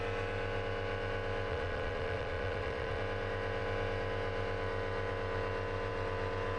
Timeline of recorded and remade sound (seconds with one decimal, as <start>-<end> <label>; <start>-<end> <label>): 0.0-1.5 recorded; 1.5-3.0 remade; 3.0-6.6 recorded